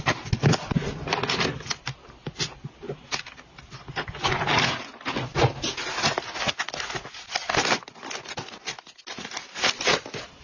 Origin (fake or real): real